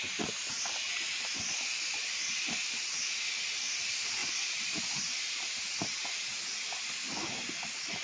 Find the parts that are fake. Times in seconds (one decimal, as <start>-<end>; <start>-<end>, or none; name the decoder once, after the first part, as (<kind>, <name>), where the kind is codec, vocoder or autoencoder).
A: 4.2-4.8 (vocoder, Vocos)